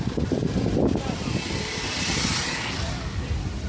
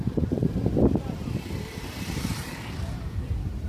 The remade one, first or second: second